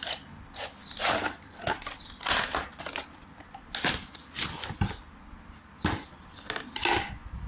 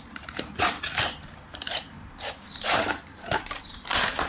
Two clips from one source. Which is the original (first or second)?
first